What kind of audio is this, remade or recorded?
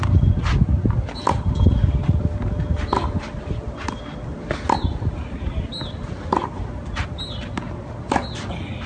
recorded